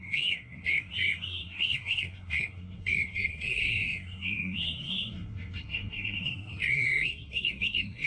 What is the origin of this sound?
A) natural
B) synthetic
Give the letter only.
B